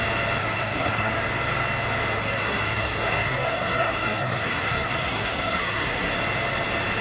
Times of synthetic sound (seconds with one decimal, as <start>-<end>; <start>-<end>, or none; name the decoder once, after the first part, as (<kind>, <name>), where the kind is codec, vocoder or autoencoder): 0.4-1.1 (codec, SNAC); 2.2-6.1